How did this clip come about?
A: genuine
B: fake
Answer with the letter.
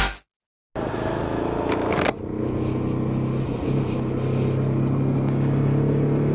A